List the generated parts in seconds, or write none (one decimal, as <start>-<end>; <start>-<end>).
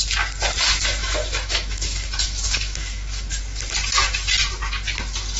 1.0-3.4